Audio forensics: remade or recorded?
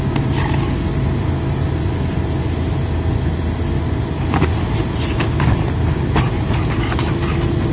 recorded